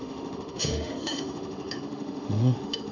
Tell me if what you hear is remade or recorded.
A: remade